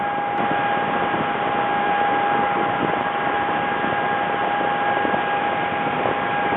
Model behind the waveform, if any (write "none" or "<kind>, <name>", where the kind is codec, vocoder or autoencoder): none